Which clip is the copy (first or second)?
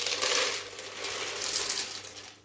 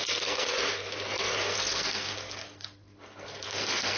second